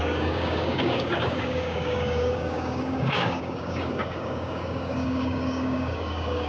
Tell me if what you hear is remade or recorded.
remade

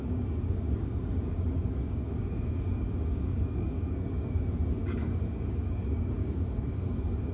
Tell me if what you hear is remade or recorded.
remade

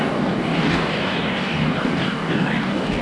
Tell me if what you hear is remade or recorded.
remade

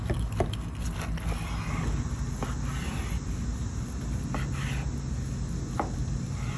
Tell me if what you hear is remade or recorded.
recorded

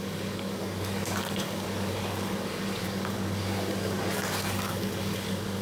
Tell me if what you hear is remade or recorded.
remade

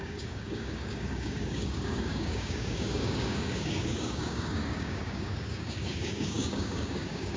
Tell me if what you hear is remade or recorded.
remade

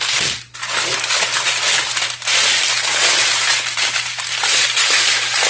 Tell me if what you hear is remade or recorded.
recorded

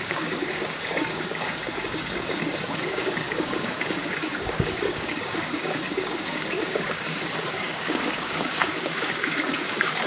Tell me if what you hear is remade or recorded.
remade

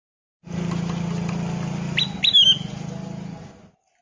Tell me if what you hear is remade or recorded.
recorded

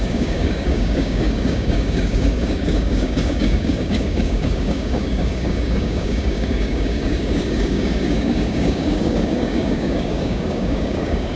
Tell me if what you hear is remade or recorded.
remade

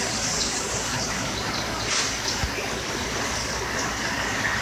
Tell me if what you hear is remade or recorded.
remade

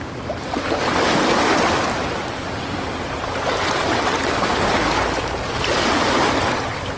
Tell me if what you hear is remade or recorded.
recorded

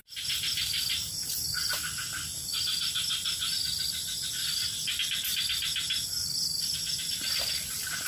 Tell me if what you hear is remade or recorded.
recorded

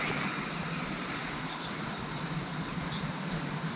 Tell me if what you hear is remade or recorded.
recorded